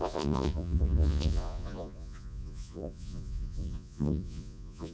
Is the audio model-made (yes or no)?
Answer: yes